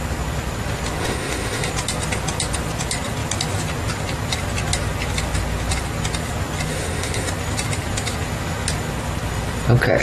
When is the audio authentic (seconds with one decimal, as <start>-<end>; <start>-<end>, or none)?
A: 0.0-1.0; 1.7-6.7; 7.3-10.0